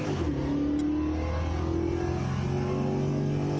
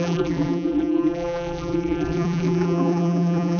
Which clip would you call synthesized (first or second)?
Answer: second